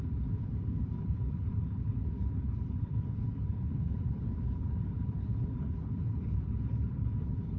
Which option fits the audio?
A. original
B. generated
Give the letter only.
B